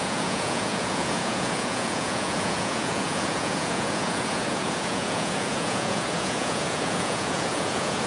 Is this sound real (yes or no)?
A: no